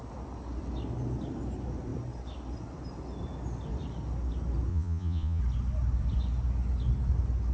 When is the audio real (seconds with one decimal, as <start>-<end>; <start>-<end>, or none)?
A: 0.0-4.7; 5.4-7.5